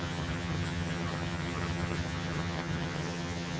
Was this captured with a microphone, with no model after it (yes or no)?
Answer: no